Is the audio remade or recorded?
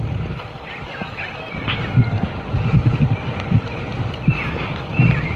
recorded